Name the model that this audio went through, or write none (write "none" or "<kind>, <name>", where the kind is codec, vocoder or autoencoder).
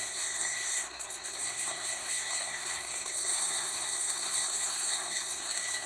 codec, SNAC